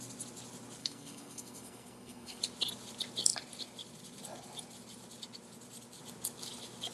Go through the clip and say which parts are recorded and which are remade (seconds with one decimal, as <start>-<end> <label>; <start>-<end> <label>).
0.0-0.8 recorded; 0.8-2.4 remade; 2.4-6.9 recorded